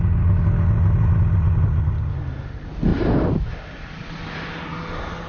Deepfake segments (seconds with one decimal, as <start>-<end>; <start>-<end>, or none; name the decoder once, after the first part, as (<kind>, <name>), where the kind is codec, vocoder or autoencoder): none